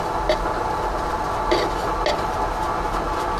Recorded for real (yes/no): yes